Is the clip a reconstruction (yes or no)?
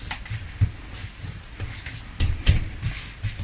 no